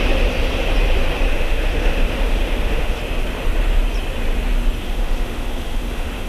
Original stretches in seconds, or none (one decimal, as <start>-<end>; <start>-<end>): 0.0-1.3; 3.0-4.8